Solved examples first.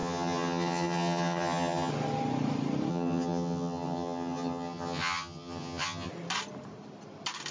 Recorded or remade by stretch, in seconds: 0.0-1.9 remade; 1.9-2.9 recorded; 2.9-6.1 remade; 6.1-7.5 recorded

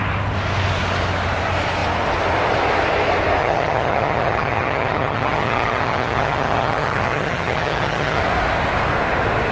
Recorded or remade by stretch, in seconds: 0.0-3.4 recorded; 3.4-8.2 remade; 8.2-9.5 recorded

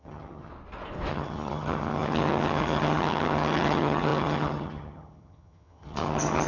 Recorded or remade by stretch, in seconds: 0.0-0.5 remade; 0.5-1.1 recorded; 1.1-6.5 remade

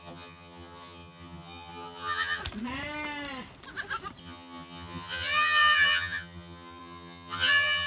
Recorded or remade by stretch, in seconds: 0.0-2.4 remade; 2.4-4.2 recorded; 4.2-7.9 remade

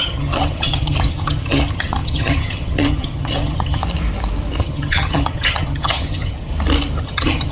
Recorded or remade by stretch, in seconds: 0.0-3.8 remade; 3.8-4.6 recorded; 4.6-6.5 remade; 6.5-7.0 recorded; 7.0-7.5 remade

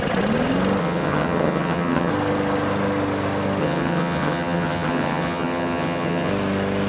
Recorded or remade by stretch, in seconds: 0.0-0.8 recorded; 0.8-2.1 remade; 2.1-3.6 recorded; 3.6-6.3 remade; 6.3-6.9 recorded

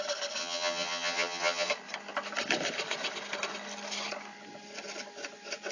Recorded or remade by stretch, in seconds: 0.0-0.4 recorded; 0.4-1.7 remade; 1.7-5.7 recorded

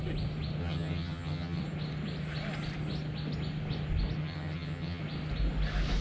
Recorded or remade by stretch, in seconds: 0.0-0.6 recorded; 0.6-1.6 remade; 1.6-4.2 recorded; 4.2-5.0 remade; 5.0-6.0 recorded